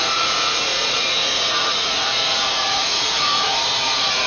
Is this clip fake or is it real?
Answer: fake